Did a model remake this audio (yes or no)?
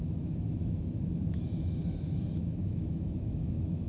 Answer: yes